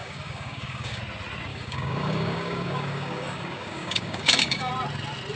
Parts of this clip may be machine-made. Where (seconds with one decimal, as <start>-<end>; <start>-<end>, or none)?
0.0-1.0; 1.5-4.7